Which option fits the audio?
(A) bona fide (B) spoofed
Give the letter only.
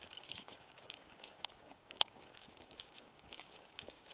B